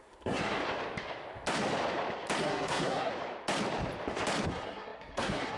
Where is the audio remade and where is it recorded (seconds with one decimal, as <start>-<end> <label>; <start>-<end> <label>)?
0.0-0.6 remade; 0.6-2.4 recorded; 2.4-3.1 remade; 3.1-4.5 recorded; 4.5-5.6 remade